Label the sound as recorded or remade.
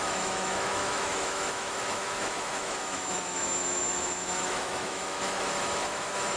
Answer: remade